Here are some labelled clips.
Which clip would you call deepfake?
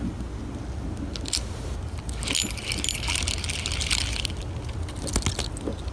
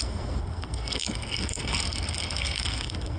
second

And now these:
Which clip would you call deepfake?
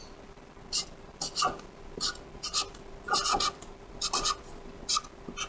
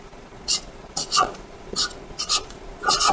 second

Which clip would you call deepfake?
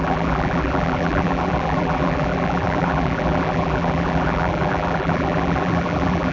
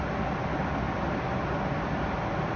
first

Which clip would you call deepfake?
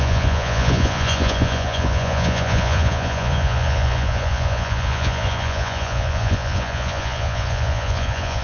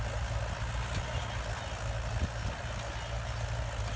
first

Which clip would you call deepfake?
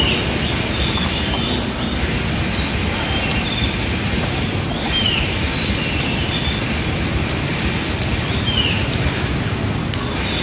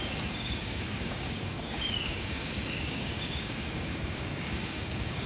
second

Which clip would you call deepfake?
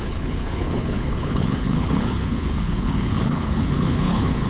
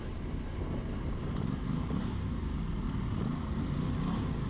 first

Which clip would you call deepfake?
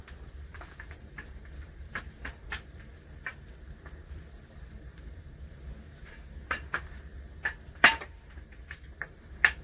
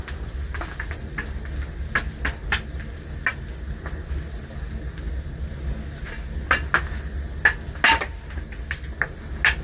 first